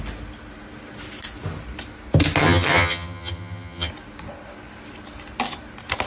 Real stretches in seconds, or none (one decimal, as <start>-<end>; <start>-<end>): 0.0-2.4; 3.9-6.1